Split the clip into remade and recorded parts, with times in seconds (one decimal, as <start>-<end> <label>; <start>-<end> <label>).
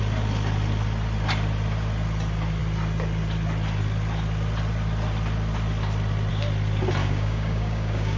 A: 0.0-7.0 recorded; 7.0-8.2 remade